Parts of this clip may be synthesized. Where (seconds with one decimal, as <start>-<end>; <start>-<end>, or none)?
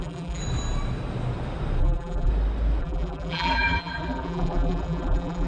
0.0-0.4; 1.8-2.3; 2.8-5.5